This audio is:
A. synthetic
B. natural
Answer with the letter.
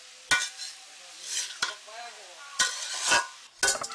B